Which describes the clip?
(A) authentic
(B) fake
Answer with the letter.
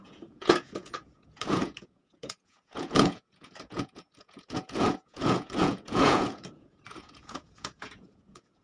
B